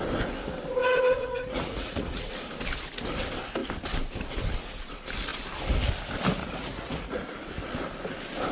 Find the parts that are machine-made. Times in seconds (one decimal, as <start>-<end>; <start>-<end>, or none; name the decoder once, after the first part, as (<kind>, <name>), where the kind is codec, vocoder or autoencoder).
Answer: 0.8-2.3 (vocoder, Vocos); 6.4-7.4